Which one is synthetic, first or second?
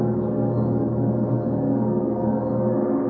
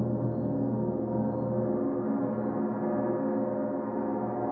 first